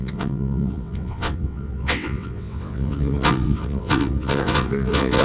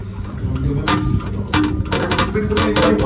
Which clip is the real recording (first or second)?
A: second